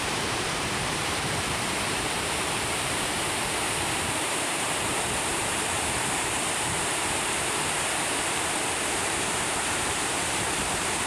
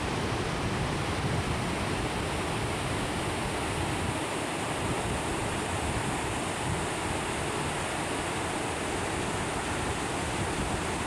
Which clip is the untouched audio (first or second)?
second